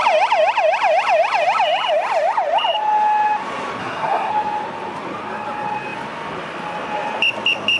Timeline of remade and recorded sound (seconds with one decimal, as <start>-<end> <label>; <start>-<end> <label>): 0.0-3.8 recorded; 3.8-4.3 remade; 4.3-7.8 recorded